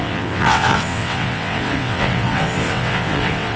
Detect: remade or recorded remade